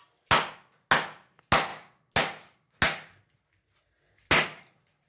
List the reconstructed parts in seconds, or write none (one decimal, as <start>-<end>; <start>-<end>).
none